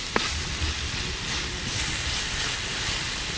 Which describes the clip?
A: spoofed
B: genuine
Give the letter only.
B